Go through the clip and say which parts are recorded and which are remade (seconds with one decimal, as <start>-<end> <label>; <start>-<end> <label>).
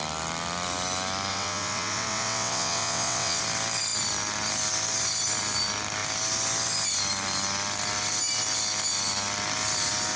0.0-1.3 recorded; 1.3-3.4 remade; 3.4-10.2 recorded